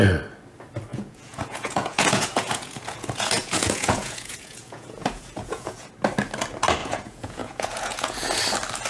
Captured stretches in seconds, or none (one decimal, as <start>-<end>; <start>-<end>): 0.0-0.9; 5.9-6.8; 8.4-8.9